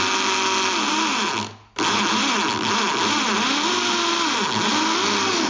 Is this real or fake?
real